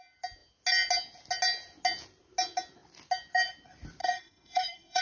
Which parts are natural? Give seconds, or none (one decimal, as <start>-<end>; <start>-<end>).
0.0-4.0